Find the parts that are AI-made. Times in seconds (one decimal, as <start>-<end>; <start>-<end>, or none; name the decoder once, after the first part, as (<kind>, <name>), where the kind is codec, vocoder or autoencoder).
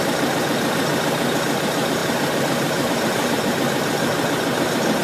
0.0-4.1 (vocoder, BigVGAN v2)